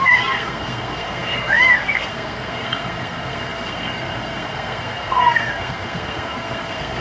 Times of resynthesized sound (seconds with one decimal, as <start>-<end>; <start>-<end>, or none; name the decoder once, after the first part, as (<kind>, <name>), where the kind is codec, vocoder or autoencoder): 0.0-7.0 (codec, SNAC)